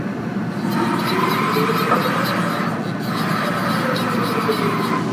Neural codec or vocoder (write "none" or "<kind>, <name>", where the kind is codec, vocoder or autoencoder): none